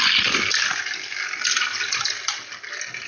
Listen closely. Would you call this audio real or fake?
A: real